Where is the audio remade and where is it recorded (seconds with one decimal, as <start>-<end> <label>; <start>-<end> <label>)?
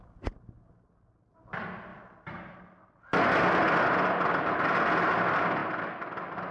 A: 0.0-6.5 recorded